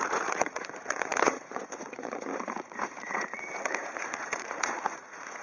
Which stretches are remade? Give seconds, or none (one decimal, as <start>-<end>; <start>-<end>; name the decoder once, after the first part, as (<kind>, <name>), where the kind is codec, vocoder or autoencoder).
0.0-5.4 (vocoder, Vocos)